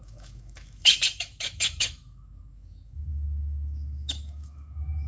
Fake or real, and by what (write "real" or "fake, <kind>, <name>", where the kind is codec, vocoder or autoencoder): fake, autoencoder, DAC-VAE